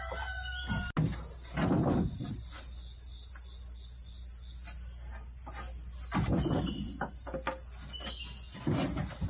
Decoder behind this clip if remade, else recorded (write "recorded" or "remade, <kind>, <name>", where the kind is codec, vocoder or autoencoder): recorded